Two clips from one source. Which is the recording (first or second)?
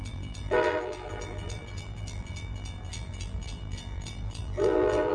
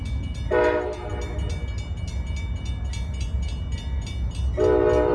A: second